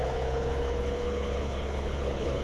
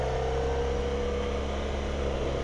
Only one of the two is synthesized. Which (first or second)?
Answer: first